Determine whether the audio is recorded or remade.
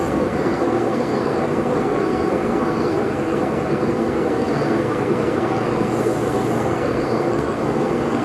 remade